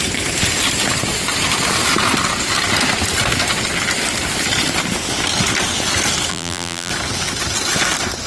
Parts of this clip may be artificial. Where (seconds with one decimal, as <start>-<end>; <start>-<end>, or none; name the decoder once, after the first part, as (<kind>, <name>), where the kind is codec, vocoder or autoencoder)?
6.3-6.9 (vocoder, BigVGAN v2)

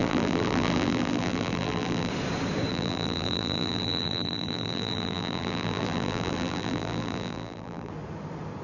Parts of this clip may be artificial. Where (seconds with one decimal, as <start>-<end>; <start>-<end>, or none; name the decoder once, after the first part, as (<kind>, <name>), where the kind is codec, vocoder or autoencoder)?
0.0-2.1 (vocoder, BigVGAN v2); 2.7-7.9

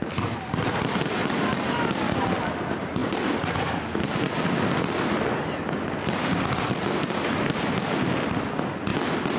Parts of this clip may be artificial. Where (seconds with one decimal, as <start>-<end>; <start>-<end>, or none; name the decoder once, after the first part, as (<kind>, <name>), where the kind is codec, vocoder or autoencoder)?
3.0-7.2 (vocoder, BigVGAN v2)

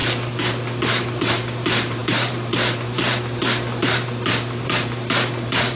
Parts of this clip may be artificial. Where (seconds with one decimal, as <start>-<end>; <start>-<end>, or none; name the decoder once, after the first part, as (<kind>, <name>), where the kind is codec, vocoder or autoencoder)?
1.2-5.8 (vocoder, BigVGAN v2)

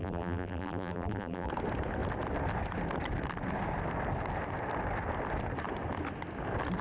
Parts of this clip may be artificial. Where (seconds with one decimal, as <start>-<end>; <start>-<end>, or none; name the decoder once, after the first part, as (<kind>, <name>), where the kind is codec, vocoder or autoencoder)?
0.0-1.5 (vocoder, BigVGAN v2)

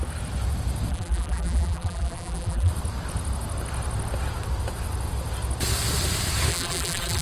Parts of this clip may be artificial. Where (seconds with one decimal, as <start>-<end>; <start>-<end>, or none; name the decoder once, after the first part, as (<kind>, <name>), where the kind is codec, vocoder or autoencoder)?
0.9-2.7 (vocoder, BigVGAN v2); 6.5-7.2

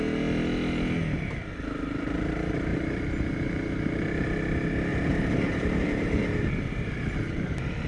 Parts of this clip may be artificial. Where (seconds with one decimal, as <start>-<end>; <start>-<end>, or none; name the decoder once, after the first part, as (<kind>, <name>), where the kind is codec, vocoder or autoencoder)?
2.7-4.1 (vocoder, BigVGAN v2); 4.9-6.2